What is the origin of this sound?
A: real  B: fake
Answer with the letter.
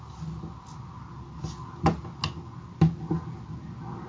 A